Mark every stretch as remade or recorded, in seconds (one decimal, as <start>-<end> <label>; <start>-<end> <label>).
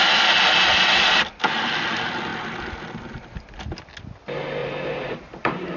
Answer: 0.0-4.6 recorded; 4.6-5.8 remade